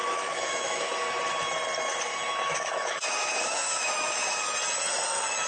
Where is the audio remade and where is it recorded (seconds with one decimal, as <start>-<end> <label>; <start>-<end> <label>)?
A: 0.0-1.0 remade; 1.0-2.1 recorded; 2.1-4.4 remade; 4.4-5.5 recorded